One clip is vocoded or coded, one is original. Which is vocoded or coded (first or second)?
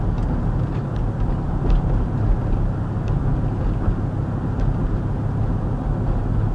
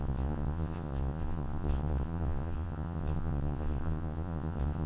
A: second